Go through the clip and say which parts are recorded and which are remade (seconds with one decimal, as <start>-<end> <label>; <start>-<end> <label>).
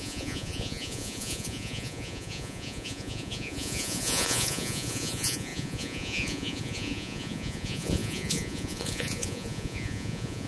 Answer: 0.0-10.5 remade